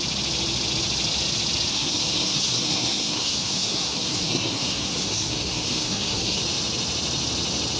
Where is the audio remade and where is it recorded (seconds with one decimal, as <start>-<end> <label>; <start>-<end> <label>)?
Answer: 0.0-1.7 recorded; 1.7-6.4 remade; 6.4-7.8 recorded